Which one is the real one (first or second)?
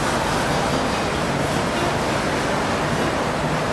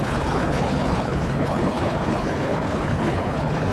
first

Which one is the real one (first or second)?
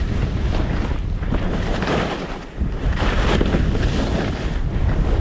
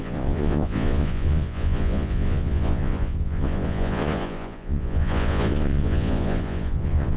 first